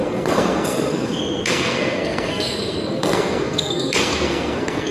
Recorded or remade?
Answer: remade